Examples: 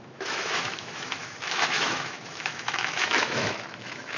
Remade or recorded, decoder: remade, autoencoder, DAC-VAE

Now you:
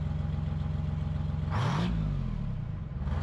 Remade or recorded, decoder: recorded